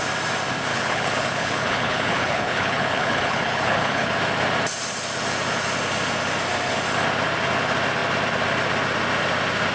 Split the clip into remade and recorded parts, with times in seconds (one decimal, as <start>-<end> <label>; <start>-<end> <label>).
0.0-0.7 recorded; 0.7-4.1 remade; 4.1-9.7 recorded

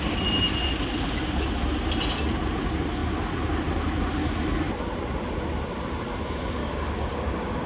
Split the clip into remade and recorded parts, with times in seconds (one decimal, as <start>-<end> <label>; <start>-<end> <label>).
0.0-6.6 recorded; 6.6-7.7 remade